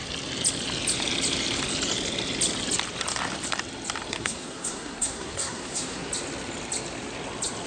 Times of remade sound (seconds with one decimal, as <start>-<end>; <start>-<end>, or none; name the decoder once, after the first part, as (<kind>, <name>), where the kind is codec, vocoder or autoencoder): 4.1-6.1 (codec, SNAC)